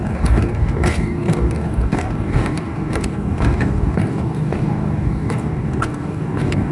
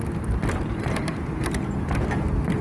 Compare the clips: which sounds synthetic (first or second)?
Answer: first